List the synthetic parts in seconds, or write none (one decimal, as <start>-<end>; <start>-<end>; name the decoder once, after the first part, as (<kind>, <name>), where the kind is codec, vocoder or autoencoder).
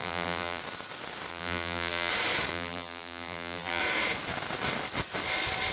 0.0-0.6 (vocoder, BigVGAN v2); 1.3-2.1; 2.5-3.8